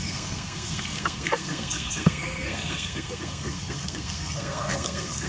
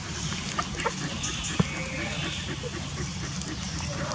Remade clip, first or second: first